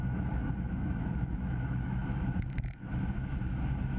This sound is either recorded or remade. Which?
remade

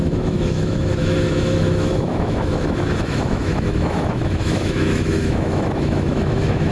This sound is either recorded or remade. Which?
remade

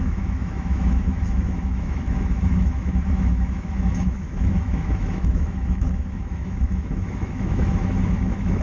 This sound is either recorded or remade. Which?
remade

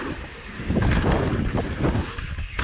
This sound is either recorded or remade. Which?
recorded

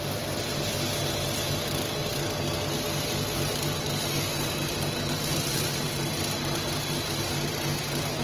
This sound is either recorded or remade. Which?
recorded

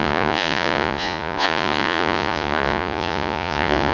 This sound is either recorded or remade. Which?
remade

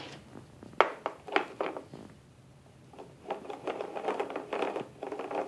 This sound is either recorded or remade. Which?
recorded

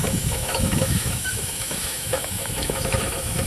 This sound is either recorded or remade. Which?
remade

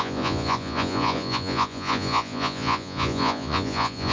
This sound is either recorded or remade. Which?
remade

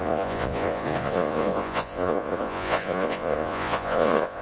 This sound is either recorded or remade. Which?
remade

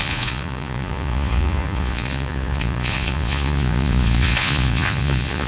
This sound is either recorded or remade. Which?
remade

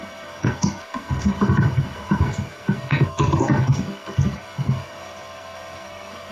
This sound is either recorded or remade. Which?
remade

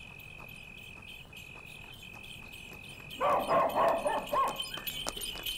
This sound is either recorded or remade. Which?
recorded